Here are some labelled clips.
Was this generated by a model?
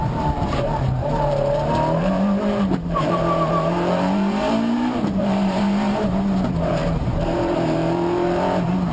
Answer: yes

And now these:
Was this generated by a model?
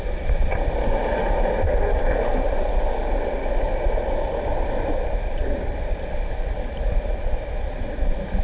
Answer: no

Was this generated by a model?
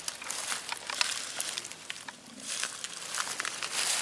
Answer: yes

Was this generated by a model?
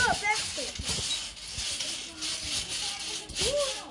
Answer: no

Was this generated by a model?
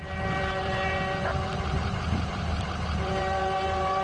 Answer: yes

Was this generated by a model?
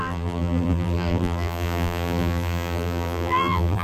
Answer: yes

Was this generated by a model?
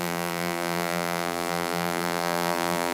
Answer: yes